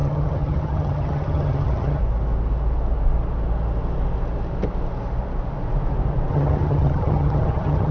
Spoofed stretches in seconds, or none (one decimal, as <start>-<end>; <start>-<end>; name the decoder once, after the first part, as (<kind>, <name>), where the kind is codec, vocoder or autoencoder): 0.0-2.0 (vocoder, HiFi-GAN); 6.3-7.9